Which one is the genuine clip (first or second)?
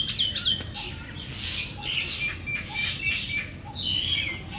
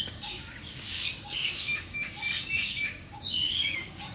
first